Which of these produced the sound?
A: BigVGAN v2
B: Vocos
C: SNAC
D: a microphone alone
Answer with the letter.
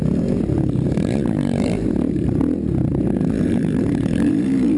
A